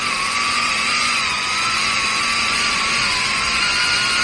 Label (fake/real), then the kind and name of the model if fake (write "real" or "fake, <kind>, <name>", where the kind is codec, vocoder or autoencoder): fake, vocoder, Vocos